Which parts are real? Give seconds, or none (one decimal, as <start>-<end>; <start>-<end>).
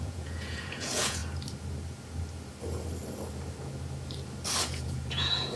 1.2-4.6